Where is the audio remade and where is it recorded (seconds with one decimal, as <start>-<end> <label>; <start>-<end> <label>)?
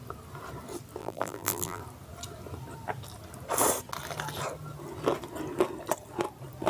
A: 0.0-1.0 recorded; 1.0-1.8 remade; 1.8-6.7 recorded